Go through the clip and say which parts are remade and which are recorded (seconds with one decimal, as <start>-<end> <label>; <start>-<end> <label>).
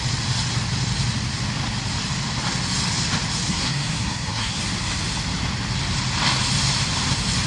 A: 0.0-3.5 recorded; 3.5-4.6 remade; 4.6-7.5 recorded